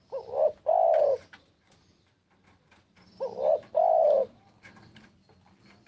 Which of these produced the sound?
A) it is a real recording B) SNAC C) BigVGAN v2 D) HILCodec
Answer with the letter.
A